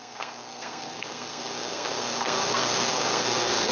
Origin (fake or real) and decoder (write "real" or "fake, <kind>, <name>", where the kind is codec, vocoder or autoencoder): fake, codec, SNAC